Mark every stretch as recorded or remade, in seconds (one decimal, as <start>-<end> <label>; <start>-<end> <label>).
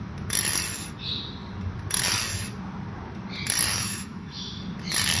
0.0-3.7 recorded; 3.7-4.6 remade; 4.6-5.2 recorded